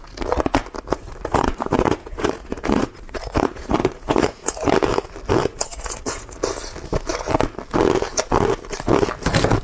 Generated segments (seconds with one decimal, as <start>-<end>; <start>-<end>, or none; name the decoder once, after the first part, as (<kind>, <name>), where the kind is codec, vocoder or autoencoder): 0.9-4.7 (vocoder, Vocos); 5.5-6.4